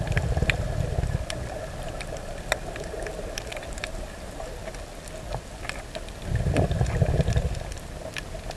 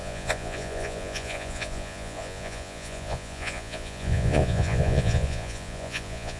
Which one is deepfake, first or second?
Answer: second